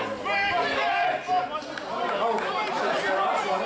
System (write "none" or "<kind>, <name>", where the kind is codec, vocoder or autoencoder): none